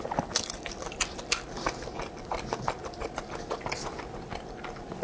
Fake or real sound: real